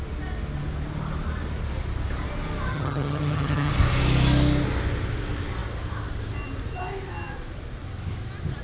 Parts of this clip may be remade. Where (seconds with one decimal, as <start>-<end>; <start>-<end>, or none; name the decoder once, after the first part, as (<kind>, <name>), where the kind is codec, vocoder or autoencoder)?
2.7-3.7 (vocoder, HiFi-GAN)